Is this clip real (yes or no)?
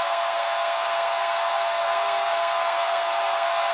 no